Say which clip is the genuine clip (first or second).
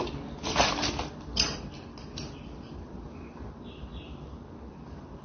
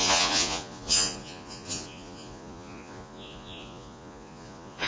first